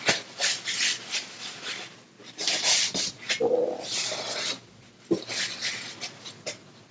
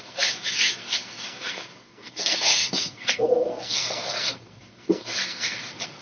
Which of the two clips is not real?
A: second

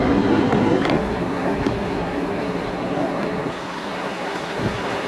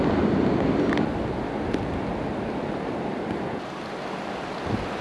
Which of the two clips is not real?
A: first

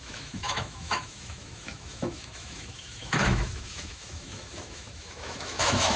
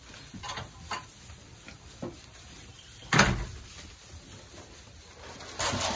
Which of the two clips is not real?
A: first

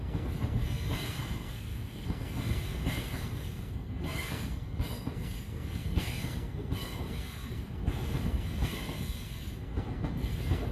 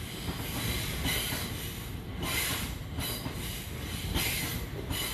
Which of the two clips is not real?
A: first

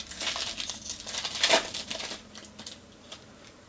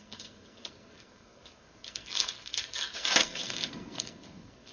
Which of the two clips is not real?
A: second